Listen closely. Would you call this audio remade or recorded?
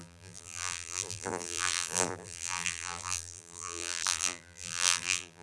remade